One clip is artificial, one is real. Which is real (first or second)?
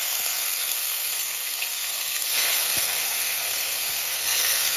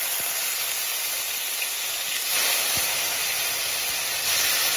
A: second